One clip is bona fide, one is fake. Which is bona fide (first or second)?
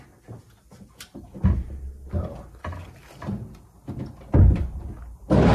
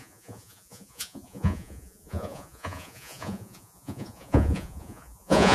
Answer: first